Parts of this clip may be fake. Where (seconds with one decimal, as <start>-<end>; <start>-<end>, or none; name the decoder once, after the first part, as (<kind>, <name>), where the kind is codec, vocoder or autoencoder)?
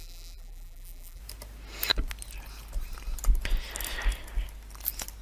0.0-1.2 (vocoder, BigVGAN v2)